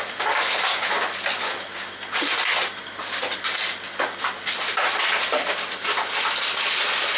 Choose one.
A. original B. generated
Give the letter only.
A